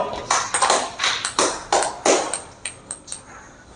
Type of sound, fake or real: real